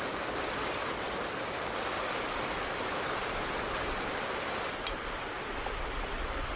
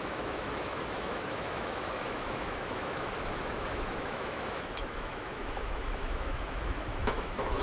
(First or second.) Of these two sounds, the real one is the first